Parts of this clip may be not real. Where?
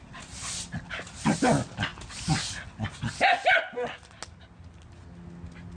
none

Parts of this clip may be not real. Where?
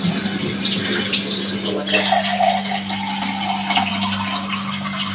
none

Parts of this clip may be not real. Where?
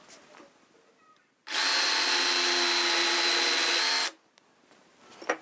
none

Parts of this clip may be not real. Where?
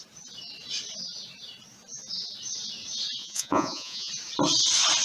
3.2-4.1 (vocoder, Vocos)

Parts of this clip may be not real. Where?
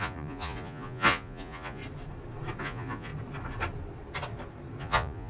0.0-1.8 (vocoder, Vocos); 2.6-3.1; 4.8-5.3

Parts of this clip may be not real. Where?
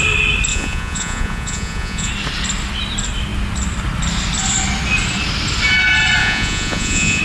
0.5-2.1 (vocoder, Vocos); 6.2-7.2